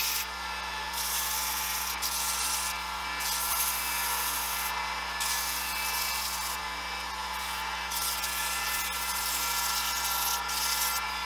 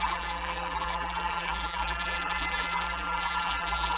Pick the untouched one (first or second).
first